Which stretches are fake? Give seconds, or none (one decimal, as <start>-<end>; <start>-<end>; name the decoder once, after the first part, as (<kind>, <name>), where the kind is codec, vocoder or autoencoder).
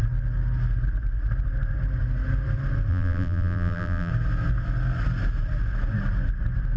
2.9-4.1 (vocoder, BigVGAN v2)